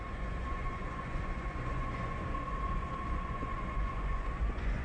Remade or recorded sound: remade